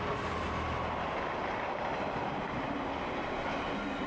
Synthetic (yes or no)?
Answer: no